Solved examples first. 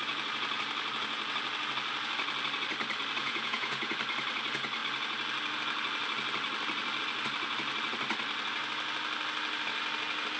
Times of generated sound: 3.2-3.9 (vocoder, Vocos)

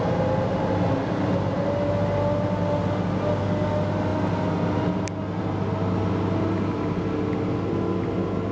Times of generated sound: none

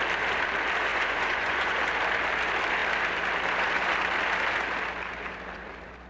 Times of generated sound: 0.9-1.8 (vocoder, Vocos)

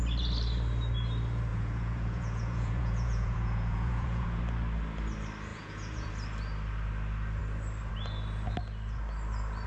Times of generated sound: 1.5-4.4 (vocoder, Vocos); 5.5-6.1

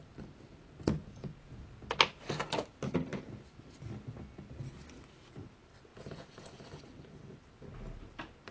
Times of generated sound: 1.0-1.6 (vocoder, Vocos); 5.9-6.6